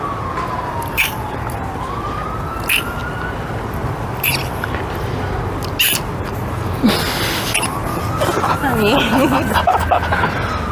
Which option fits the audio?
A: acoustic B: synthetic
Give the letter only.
A